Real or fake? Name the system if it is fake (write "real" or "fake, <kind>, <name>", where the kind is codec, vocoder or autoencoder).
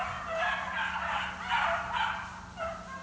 real